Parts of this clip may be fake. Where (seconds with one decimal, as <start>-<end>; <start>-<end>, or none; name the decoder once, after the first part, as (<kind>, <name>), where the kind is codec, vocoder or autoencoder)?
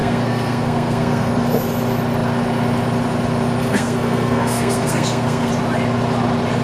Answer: 0.0-1.3 (codec, SNAC); 3.6-5.5